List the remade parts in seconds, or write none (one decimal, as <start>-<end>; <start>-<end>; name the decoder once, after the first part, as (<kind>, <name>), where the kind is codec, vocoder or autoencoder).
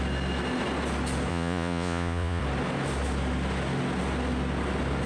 1.3-2.4 (vocoder, Vocos)